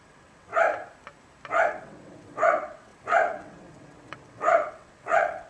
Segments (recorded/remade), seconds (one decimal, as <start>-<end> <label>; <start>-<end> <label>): 0.0-0.5 remade; 0.5-1.7 recorded; 1.7-5.5 remade